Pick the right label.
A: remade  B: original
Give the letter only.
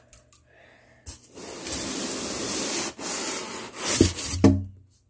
B